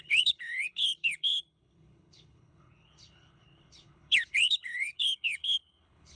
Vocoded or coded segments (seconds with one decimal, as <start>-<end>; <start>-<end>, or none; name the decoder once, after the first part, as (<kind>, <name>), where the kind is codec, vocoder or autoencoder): 0.0-6.2 (codec, HILCodec)